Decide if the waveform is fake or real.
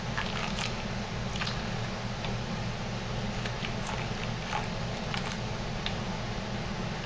real